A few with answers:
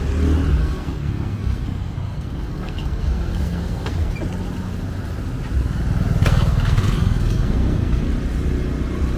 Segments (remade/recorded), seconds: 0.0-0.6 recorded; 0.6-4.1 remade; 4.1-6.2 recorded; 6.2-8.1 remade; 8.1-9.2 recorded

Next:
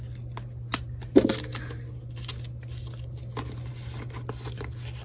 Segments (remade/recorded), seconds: 0.0-5.0 recorded